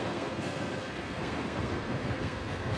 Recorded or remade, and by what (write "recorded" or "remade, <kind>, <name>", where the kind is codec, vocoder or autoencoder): remade, codec, SNAC